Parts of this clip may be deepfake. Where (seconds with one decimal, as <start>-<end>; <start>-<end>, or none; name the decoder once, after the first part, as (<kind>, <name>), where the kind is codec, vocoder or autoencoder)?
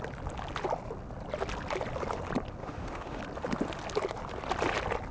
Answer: 2.6-3.2 (autoencoder, DAC-VAE)